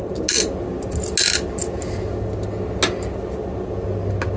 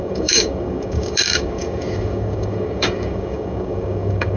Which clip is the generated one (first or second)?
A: second